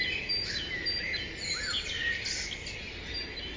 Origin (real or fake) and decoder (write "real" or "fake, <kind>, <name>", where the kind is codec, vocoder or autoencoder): real